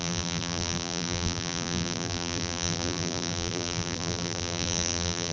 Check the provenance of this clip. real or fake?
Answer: fake